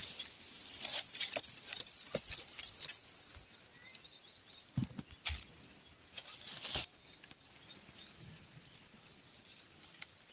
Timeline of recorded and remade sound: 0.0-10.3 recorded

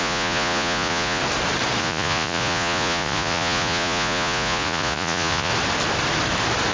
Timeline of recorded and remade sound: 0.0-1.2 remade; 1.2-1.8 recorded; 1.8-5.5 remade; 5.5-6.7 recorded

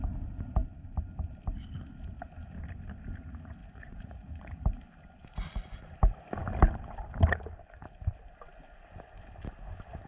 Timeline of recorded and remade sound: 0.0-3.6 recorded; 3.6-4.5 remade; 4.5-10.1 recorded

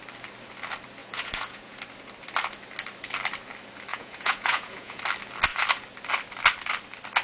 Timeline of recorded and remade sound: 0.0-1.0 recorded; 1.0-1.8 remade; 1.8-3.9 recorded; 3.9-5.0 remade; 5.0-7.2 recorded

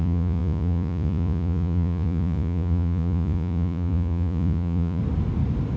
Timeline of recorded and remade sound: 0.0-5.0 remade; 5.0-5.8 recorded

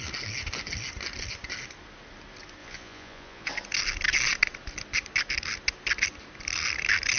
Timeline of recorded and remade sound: 0.0-2.6 recorded; 2.6-3.5 remade; 3.5-7.2 recorded

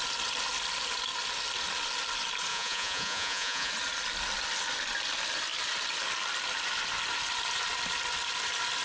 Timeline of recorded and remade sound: 0.0-2.5 recorded; 2.5-3.7 remade; 3.7-8.8 recorded

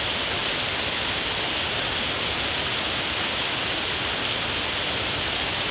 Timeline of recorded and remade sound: 0.0-5.7 recorded